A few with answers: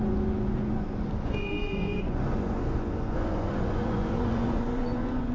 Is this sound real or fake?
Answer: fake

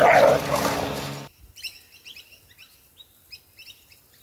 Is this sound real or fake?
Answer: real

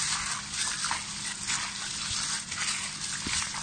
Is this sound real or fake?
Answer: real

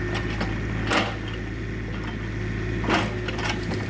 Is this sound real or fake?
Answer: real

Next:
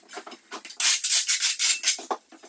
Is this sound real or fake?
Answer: real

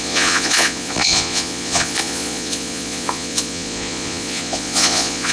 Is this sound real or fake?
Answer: fake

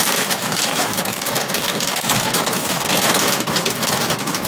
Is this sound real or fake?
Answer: fake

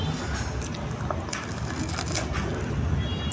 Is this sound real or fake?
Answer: real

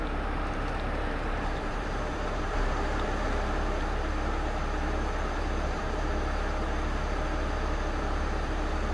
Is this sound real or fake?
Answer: fake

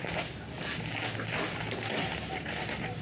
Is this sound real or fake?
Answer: real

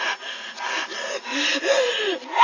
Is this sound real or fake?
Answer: real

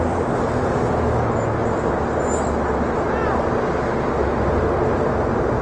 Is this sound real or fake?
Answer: real